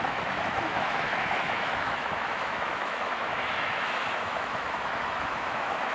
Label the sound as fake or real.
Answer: fake